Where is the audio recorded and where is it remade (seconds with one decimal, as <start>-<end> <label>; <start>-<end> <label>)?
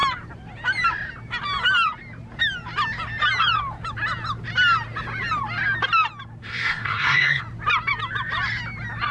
0.0-6.4 recorded; 6.4-7.4 remade; 7.4-9.1 recorded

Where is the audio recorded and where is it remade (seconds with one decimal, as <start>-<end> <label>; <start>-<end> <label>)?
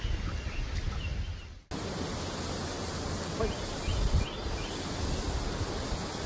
0.0-6.3 recorded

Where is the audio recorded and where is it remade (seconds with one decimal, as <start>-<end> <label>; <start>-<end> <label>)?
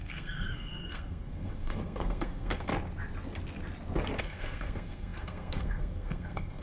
0.0-2.7 remade; 2.7-4.2 recorded; 4.2-6.6 remade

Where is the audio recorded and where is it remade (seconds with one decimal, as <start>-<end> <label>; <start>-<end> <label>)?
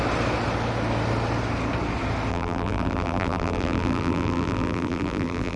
0.0-2.3 recorded; 2.3-5.6 remade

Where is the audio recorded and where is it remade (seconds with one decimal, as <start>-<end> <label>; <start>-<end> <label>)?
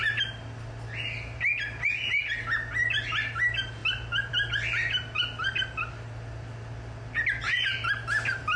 0.0-8.6 recorded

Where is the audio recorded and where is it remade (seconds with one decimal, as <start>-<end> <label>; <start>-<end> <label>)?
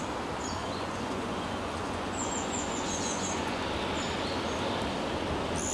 0.0-0.6 recorded; 0.6-3.6 remade; 3.6-5.7 recorded